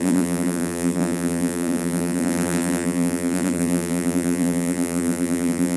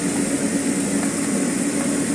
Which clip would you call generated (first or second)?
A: first